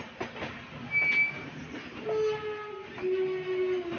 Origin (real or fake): real